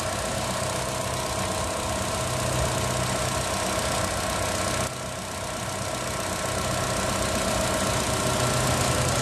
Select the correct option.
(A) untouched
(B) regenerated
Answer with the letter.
A